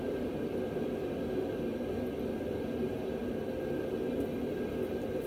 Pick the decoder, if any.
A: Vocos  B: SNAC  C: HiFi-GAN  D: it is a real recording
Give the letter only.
D